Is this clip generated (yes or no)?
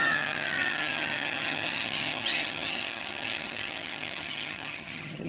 yes